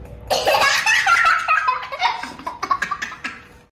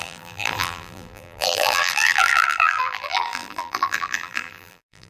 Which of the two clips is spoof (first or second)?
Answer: second